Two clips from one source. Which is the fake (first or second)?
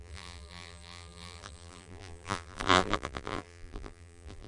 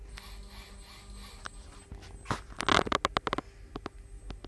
first